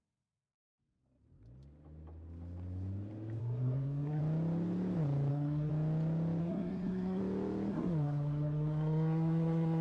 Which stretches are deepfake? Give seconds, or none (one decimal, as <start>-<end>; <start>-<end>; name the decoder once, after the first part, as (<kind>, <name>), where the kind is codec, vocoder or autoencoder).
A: 0.0-1.0 (codec, SNAC); 3.4-4.2; 5.3-5.7; 6.4-7.2; 7.7-9.8